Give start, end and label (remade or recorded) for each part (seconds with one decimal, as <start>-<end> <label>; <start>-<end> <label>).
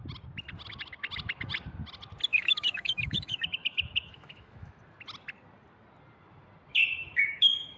0.0-2.3 recorded; 2.3-4.8 remade; 4.8-7.0 recorded; 7.0-7.8 remade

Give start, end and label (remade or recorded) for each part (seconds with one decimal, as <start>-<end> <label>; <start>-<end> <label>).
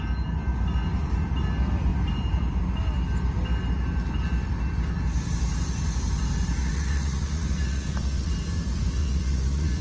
0.0-6.6 recorded; 6.6-8.3 remade; 8.3-9.0 recorded; 9.0-9.8 remade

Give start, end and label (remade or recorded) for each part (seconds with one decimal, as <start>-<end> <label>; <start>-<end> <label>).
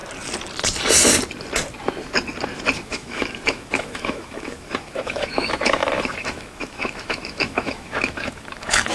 0.0-2.8 recorded; 2.8-8.9 remade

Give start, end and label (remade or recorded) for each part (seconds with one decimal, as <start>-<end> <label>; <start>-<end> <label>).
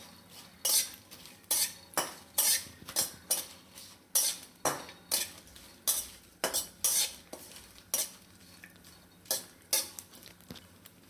0.0-11.1 recorded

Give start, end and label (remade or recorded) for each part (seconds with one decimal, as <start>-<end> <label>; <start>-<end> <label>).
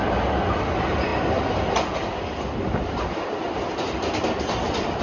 0.0-5.0 recorded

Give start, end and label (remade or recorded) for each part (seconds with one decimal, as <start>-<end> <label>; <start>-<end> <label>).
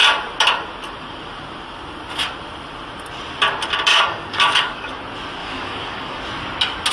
0.0-3.9 recorded; 3.9-5.0 remade; 5.0-5.4 recorded; 5.4-6.3 remade; 6.3-6.9 recorded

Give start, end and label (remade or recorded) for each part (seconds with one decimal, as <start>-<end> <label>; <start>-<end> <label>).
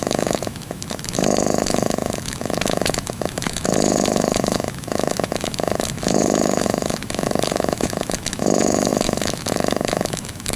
0.0-10.6 remade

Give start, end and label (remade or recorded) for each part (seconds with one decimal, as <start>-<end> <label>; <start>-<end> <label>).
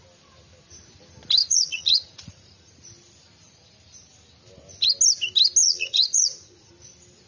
0.0-1.4 recorded; 1.4-2.7 remade; 2.7-5.6 recorded; 5.6-6.7 remade; 6.7-7.3 recorded